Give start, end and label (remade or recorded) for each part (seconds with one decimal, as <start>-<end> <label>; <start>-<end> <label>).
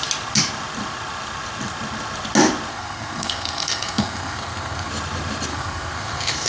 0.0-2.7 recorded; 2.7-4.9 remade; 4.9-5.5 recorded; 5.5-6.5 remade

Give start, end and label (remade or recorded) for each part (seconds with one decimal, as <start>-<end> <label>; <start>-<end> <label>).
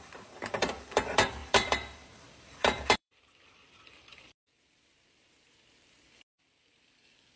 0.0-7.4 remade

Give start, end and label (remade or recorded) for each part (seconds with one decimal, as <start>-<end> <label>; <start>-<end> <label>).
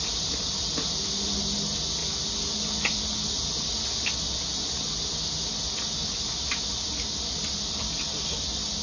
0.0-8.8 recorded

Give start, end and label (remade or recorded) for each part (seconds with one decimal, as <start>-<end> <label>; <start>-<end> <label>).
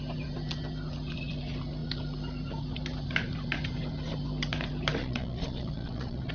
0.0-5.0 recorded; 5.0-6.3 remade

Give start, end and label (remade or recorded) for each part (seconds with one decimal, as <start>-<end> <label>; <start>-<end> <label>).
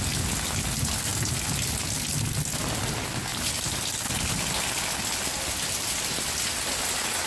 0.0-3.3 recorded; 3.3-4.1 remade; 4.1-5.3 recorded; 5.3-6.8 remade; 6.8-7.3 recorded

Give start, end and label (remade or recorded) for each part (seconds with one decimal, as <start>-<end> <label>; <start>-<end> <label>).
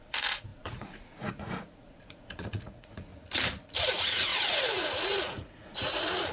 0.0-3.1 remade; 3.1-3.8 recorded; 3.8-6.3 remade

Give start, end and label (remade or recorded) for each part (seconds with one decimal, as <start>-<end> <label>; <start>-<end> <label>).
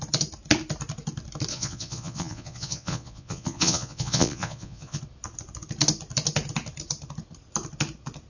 0.0-1.5 recorded; 1.5-5.0 remade; 5.0-8.3 recorded